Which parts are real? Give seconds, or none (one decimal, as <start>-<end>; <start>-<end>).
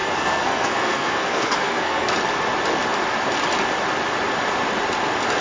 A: 2.1-5.4